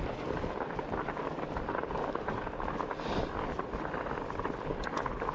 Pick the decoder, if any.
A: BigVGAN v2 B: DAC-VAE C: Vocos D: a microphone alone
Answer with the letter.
A